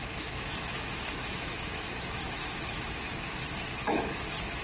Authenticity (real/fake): fake